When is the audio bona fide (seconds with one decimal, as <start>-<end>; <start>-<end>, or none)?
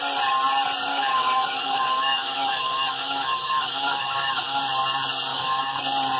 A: 0.0-0.9; 4.6-5.3; 5.8-6.2